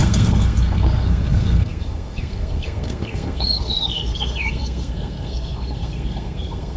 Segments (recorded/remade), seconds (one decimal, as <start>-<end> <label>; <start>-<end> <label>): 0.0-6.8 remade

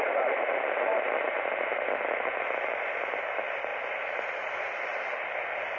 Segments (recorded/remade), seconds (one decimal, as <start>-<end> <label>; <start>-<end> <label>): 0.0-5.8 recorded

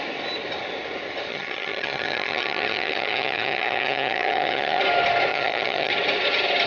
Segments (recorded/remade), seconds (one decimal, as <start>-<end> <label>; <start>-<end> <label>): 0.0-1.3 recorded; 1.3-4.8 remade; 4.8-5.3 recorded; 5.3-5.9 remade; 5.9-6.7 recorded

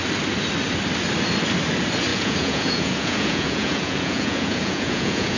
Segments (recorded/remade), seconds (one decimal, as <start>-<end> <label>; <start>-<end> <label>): 0.0-2.1 recorded; 2.1-5.4 remade

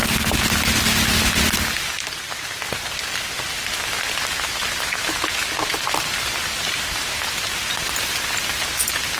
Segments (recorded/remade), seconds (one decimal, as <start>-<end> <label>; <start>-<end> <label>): 0.0-9.2 recorded

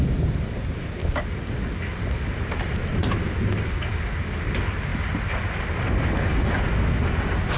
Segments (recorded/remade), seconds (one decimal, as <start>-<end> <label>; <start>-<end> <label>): 0.0-2.9 recorded; 2.9-3.6 remade; 3.6-7.6 recorded

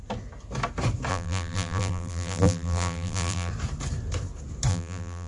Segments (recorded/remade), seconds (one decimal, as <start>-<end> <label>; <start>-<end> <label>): 0.0-1.1 recorded; 1.1-3.5 remade; 3.5-4.7 recorded; 4.7-5.3 remade

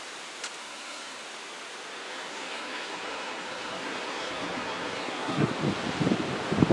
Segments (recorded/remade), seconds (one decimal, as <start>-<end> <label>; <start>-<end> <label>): 0.0-0.6 recorded; 0.6-1.2 remade; 1.2-2.1 recorded; 2.1-5.5 remade; 5.5-6.7 recorded